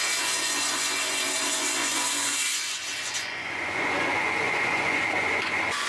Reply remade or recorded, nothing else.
remade